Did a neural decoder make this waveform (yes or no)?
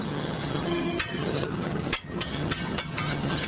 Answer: yes